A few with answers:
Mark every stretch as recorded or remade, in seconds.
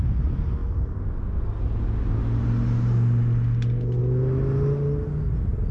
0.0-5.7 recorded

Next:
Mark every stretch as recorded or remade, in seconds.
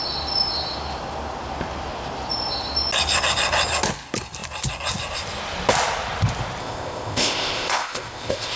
0.0-6.6 recorded; 6.6-8.6 remade